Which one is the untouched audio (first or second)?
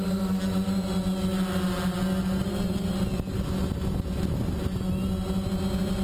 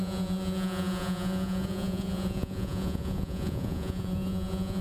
first